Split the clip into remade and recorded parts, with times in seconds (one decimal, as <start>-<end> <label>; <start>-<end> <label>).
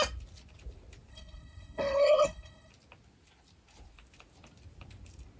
0.0-1.1 recorded; 1.1-2.7 remade; 2.7-5.4 recorded